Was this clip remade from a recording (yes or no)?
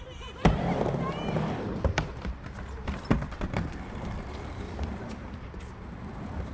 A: no